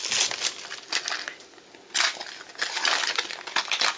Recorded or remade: recorded